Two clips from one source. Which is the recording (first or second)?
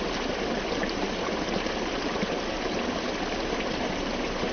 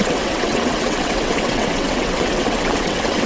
first